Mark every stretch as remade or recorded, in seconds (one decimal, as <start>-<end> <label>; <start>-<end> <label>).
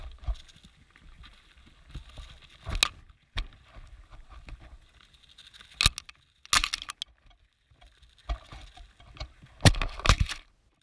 0.0-10.8 recorded